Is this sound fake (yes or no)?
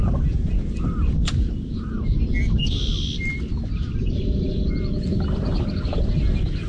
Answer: no